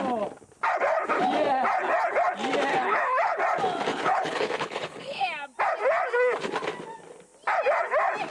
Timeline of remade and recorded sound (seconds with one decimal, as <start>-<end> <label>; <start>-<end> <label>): 0.0-2.7 recorded; 2.7-3.4 remade; 3.4-3.9 recorded; 3.9-5.2 remade; 5.2-8.3 recorded